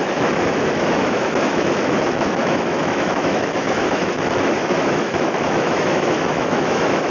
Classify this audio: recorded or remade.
remade